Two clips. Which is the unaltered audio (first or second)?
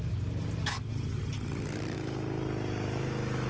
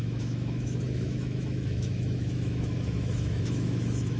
first